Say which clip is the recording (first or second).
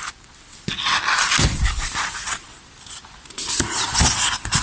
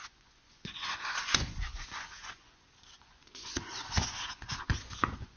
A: first